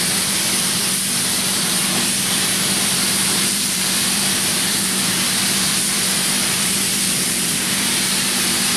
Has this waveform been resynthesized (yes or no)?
yes